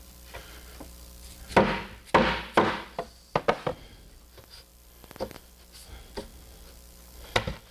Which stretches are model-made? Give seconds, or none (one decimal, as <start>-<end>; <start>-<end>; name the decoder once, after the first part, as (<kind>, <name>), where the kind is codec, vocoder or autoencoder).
none

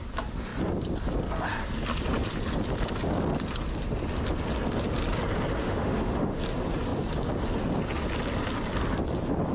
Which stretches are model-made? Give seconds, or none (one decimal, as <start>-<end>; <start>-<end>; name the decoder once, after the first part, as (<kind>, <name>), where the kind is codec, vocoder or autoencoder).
5.6-6.4 (autoencoder, DAC-VAE)

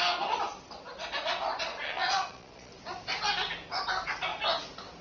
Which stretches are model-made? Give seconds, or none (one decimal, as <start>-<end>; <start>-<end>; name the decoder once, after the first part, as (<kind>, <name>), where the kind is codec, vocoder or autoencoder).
1.7-2.7 (vocoder, Vocos)

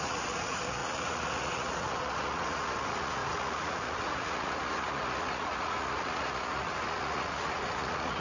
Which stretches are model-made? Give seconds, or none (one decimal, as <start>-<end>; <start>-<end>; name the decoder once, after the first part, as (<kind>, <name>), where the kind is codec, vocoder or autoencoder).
0.0-8.2 (vocoder, Vocos)

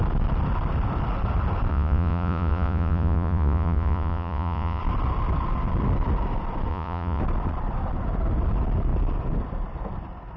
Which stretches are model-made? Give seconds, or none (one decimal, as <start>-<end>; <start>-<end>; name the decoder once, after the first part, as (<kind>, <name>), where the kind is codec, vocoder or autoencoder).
1.7-4.8 (vocoder, Vocos); 6.7-7.2

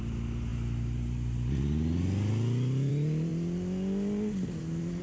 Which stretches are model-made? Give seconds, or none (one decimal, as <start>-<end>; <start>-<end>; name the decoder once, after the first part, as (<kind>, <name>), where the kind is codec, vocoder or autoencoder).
none

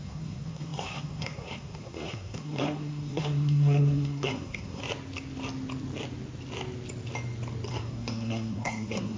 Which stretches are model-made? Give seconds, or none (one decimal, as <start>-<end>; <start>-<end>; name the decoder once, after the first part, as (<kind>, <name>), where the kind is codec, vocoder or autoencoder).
0.0-4.8 (codec, SNAC); 7.7-9.2